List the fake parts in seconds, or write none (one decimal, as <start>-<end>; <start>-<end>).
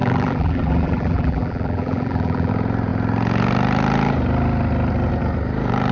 0.0-2.5